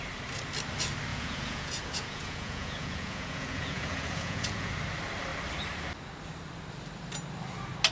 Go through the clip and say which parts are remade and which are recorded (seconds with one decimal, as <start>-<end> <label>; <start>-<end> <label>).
0.0-1.1 recorded; 1.1-4.7 remade; 4.7-7.9 recorded